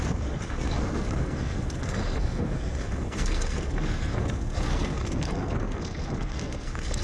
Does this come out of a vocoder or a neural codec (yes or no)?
yes